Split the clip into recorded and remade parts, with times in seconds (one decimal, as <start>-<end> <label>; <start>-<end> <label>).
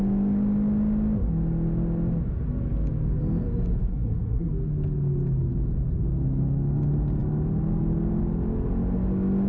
0.0-3.9 recorded; 3.9-4.5 remade; 4.5-9.5 recorded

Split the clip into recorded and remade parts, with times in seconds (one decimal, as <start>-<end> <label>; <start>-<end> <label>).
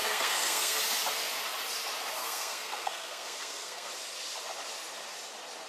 0.0-0.8 remade; 0.8-2.2 recorded; 2.2-3.9 remade; 3.9-5.7 recorded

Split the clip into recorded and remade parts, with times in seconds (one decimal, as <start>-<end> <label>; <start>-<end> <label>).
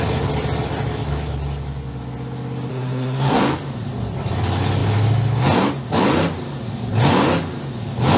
0.0-2.7 recorded; 2.7-3.4 remade; 3.4-8.2 recorded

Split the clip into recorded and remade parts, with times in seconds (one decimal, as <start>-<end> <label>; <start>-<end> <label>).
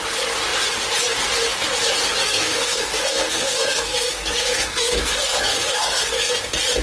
0.0-2.2 recorded; 2.2-6.3 remade; 6.3-6.8 recorded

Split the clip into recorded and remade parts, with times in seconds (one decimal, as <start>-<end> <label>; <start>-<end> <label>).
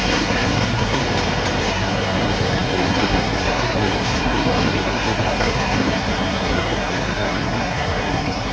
0.0-1.0 remade; 1.0-1.6 recorded; 1.6-8.5 remade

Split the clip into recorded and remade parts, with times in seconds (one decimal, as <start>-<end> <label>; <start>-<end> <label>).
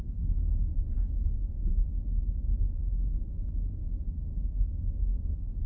0.0-0.7 remade; 0.7-4.1 recorded; 4.1-5.7 remade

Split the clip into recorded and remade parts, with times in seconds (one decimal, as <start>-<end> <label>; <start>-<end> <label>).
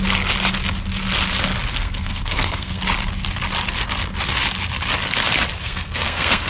0.0-1.7 recorded; 1.7-2.8 remade; 2.8-5.6 recorded; 5.6-6.5 remade